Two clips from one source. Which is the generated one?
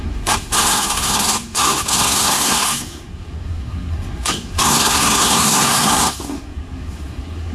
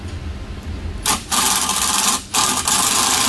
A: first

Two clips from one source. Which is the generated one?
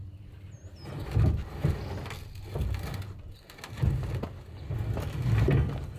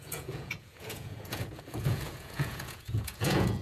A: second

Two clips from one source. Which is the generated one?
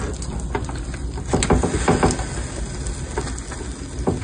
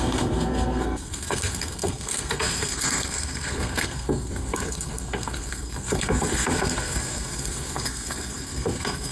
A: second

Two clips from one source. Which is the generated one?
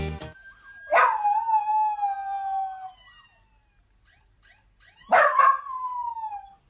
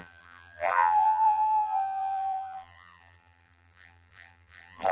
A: second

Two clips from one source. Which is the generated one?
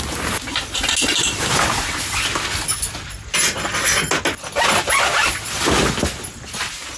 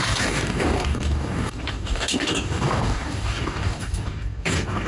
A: second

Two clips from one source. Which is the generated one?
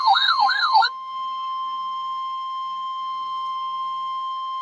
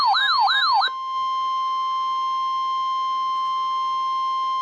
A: first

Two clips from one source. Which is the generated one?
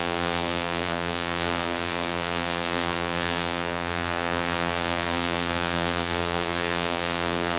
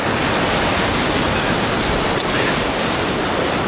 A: first